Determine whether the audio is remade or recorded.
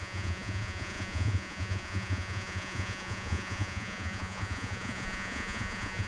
remade